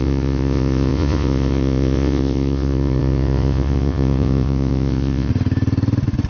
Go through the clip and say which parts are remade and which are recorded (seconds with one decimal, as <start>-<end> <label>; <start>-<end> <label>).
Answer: 0.0-5.3 remade; 5.3-6.3 recorded